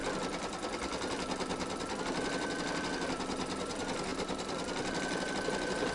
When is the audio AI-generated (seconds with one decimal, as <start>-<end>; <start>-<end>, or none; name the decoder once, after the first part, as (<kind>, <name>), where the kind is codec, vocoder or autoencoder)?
none